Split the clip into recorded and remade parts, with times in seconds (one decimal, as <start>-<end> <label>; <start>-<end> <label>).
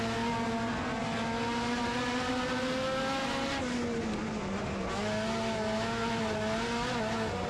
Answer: 0.0-7.5 recorded